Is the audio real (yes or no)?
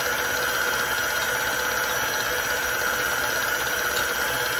yes